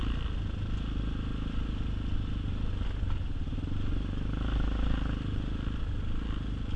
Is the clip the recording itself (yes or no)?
yes